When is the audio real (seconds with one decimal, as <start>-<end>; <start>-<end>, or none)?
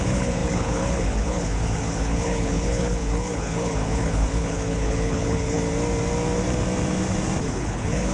5.6-7.4